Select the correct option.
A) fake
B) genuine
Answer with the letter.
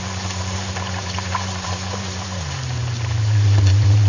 A